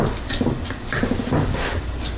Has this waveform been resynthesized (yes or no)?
no